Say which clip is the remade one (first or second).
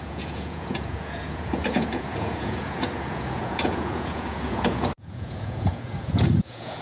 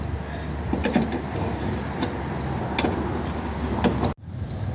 first